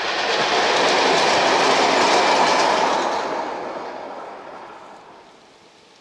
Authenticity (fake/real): real